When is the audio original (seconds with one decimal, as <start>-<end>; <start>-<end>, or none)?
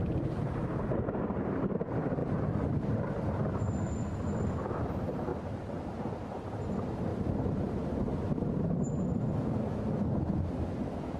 7.1-7.6; 8.1-11.2